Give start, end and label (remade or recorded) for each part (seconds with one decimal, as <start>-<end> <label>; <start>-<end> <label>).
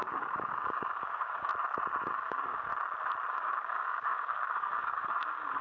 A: 0.0-1.5 remade; 1.5-2.1 recorded; 2.1-2.7 remade; 2.7-3.3 recorded; 3.3-5.6 remade